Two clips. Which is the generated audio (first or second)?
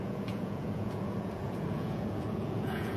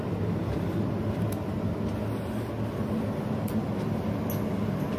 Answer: first